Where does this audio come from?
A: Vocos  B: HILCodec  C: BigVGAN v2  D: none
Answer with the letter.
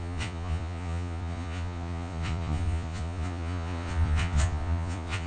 A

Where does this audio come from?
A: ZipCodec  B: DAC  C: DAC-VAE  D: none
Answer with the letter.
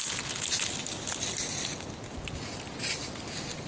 D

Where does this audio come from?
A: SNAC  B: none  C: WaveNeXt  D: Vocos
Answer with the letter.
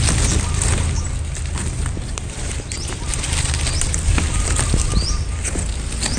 B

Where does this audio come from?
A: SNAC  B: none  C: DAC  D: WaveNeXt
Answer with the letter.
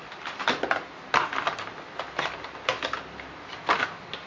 B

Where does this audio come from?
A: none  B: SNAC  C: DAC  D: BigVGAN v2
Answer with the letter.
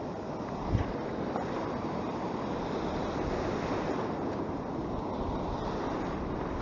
A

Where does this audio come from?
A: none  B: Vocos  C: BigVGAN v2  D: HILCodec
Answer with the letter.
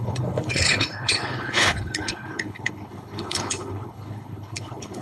D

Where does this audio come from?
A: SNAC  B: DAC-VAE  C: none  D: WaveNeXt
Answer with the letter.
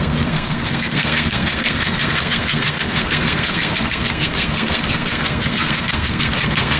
A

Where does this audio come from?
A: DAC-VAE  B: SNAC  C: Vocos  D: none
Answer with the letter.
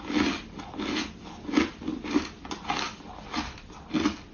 D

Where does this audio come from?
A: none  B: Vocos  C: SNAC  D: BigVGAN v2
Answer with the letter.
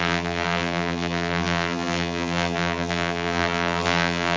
D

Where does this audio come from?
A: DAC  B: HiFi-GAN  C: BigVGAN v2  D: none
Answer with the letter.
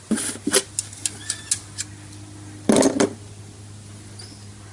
D